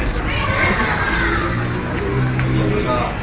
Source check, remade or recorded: recorded